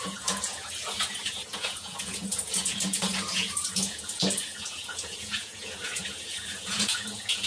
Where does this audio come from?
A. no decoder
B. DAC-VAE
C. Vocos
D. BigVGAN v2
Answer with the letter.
C